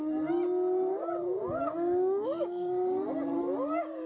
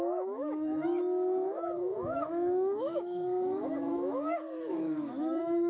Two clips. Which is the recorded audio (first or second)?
first